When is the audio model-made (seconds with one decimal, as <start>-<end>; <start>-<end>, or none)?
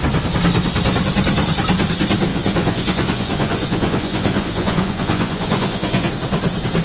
2.3-6.1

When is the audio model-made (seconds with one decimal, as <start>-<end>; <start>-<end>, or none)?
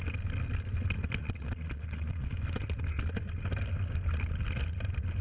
1.2-2.3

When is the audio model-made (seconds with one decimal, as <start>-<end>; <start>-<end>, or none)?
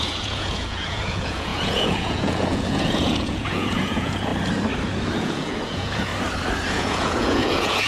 0.0-4.3; 5.2-6.1; 6.7-7.9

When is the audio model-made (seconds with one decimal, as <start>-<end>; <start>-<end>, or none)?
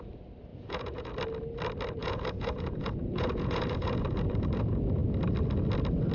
0.5-1.1; 2.0-4.6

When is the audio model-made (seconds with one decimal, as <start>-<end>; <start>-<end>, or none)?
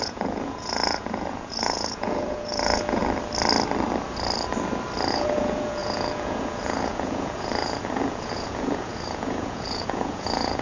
0.0-3.0; 5.1-10.6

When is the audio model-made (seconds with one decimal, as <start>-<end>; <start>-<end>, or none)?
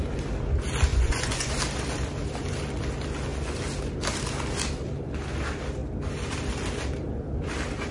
0.9-1.5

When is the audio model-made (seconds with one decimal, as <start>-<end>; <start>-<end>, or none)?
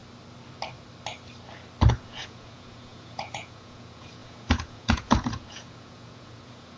1.9-6.8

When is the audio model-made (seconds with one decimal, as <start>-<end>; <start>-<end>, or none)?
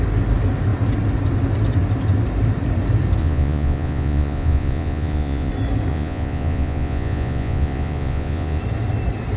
3.2-5.5; 5.9-8.6